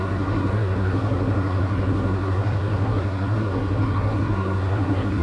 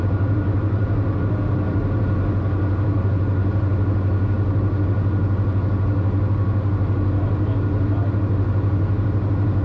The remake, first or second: first